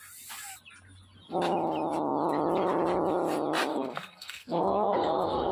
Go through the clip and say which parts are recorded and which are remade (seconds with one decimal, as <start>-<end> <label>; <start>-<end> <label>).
0.0-3.7 recorded; 3.7-5.5 remade